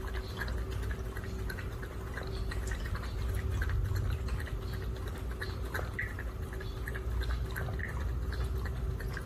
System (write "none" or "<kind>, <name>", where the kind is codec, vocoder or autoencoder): none